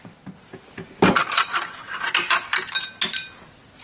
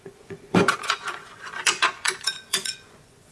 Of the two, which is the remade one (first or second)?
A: second